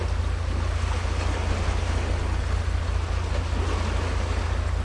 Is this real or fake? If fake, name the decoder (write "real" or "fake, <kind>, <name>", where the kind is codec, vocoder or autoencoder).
real